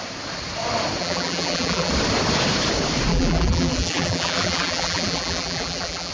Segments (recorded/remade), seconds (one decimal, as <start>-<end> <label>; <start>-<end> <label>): 0.0-1.0 recorded; 1.0-1.9 remade; 1.9-3.1 recorded; 3.1-6.1 remade